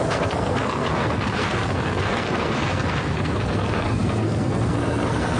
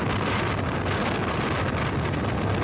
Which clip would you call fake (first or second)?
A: first